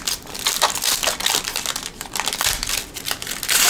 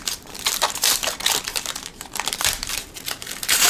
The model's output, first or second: second